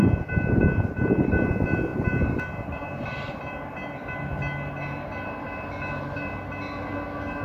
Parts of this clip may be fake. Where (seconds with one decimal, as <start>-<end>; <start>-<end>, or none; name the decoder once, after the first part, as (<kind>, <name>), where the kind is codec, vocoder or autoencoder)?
none